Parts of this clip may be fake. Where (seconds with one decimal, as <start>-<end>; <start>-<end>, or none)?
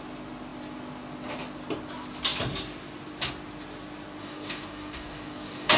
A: 4.2-5.8